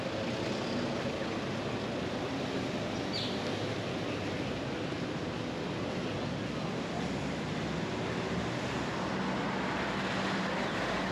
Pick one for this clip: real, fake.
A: real